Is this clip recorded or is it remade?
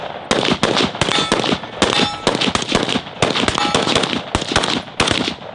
recorded